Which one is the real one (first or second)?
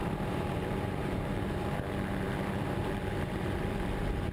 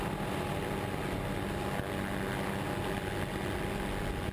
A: second